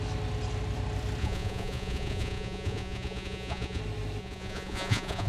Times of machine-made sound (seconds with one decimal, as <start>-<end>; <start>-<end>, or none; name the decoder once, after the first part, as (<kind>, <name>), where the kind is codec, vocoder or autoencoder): 1.2-3.8 (vocoder, Vocos); 4.2-5.3